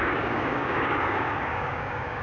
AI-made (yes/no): yes